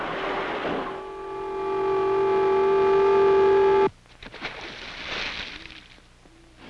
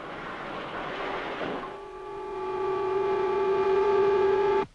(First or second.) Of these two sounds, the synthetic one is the second